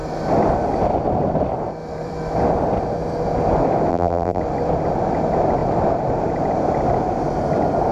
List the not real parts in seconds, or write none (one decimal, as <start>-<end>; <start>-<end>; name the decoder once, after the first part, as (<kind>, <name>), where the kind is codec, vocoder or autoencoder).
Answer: 3.9-4.4 (vocoder, BigVGAN v2)